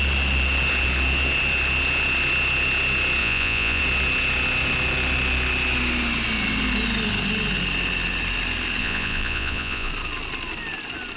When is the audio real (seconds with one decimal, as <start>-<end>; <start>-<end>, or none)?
0.0-3.2; 3.8-8.8; 9.9-11.2